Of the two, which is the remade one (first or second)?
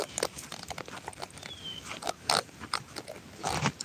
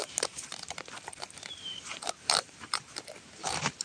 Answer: second